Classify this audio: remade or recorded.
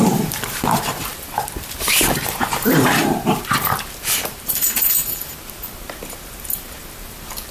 remade